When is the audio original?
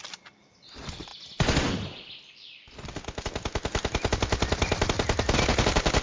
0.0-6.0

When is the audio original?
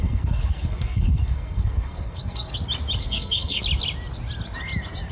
2.5-3.0; 3.6-5.1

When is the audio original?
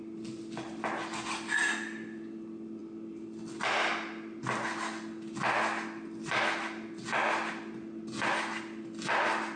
0.0-9.6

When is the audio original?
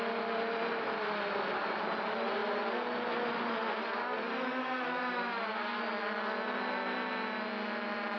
0.0-8.2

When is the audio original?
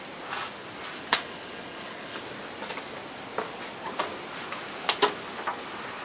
0.0-1.1; 2.2-6.0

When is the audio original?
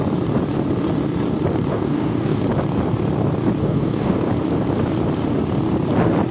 0.0-1.7; 2.4-3.6; 4.3-6.3